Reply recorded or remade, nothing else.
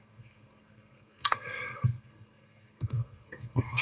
remade